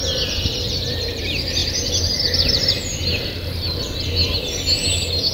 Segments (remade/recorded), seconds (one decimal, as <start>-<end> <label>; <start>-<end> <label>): 0.0-5.3 recorded